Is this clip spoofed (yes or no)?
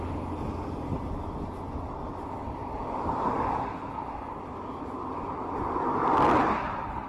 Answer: no